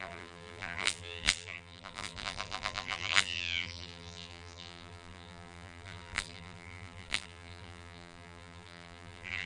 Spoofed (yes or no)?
yes